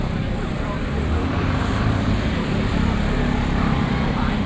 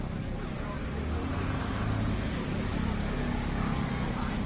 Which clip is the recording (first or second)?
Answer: second